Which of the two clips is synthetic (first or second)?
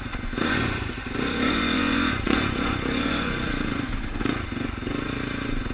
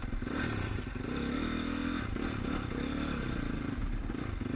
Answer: first